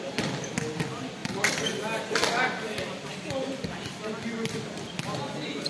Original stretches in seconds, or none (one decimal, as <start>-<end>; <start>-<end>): 0.0-5.7